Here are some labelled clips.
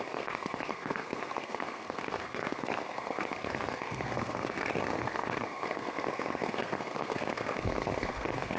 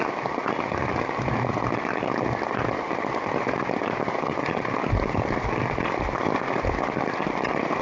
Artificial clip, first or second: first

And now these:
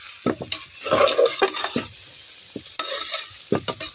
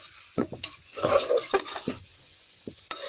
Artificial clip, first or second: second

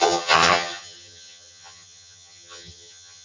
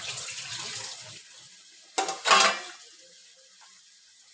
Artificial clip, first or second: first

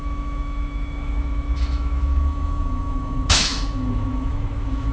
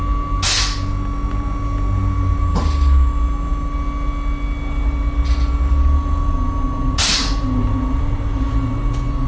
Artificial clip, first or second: first